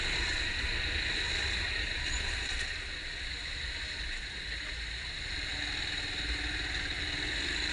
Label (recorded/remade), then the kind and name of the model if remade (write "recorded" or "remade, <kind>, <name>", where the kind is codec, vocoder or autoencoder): recorded